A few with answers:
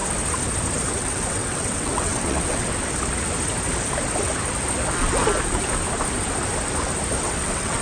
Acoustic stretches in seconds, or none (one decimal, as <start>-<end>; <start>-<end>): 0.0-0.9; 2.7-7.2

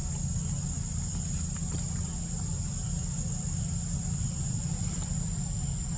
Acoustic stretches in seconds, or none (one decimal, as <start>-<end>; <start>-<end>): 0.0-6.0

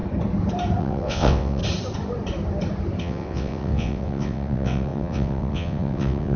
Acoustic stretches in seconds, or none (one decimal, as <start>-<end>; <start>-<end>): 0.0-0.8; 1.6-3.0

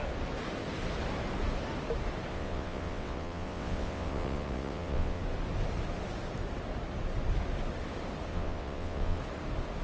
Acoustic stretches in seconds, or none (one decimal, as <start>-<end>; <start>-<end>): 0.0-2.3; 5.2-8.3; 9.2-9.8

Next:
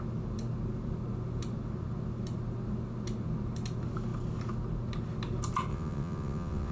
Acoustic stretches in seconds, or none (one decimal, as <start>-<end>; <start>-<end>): 0.0-5.7

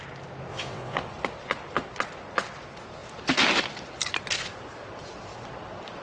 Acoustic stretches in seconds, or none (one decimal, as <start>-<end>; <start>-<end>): 0.0-0.5; 1.1-6.0